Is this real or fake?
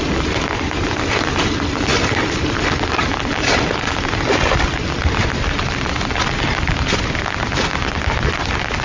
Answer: real